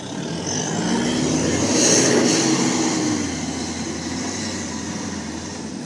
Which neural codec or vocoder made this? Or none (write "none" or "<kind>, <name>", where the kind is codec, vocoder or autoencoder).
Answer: none